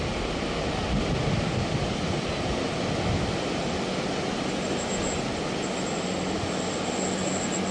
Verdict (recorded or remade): recorded